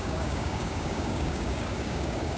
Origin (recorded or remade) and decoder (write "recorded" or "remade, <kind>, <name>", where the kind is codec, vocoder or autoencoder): remade, codec, DAC